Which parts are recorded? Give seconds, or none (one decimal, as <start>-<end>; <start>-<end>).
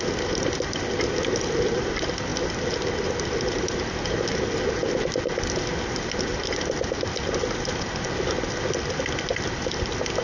0.0-10.2